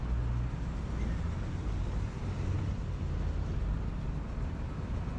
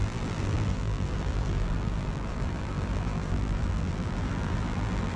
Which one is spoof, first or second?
second